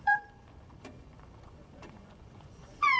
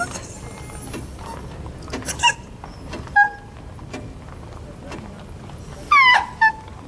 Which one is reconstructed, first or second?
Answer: first